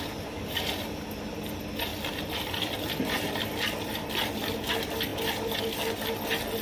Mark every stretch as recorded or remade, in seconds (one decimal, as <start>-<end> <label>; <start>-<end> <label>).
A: 0.0-1.9 recorded; 1.9-3.4 remade; 3.4-5.1 recorded; 5.1-5.6 remade; 5.6-6.6 recorded